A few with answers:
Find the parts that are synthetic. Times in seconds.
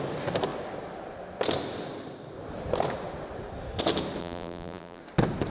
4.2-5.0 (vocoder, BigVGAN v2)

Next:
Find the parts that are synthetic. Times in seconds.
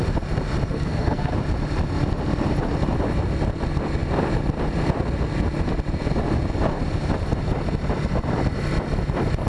0.7-1.3 (codec, SNAC)